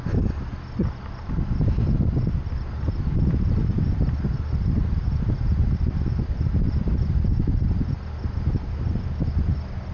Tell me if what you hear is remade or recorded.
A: recorded